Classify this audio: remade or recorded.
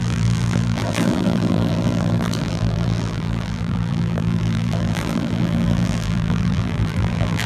remade